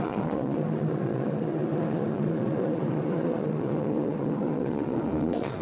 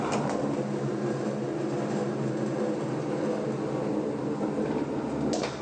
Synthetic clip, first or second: first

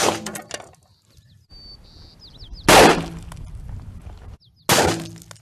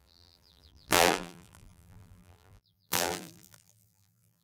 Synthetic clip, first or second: second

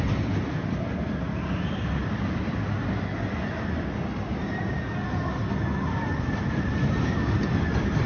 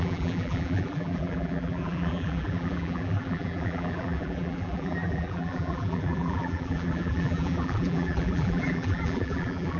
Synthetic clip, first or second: second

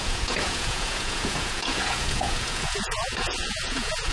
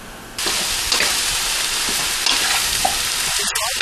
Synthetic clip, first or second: first